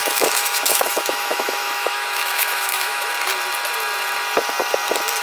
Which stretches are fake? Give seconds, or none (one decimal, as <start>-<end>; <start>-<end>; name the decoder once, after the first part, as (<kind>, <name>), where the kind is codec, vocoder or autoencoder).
0.0-3.1 (autoencoder, DAC-VAE)